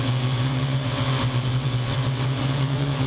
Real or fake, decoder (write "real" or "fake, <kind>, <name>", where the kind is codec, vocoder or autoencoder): fake, vocoder, WaveNeXt